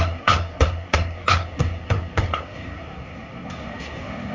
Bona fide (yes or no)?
no